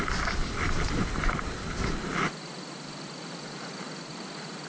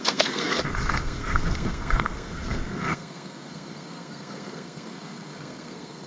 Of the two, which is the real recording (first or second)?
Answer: first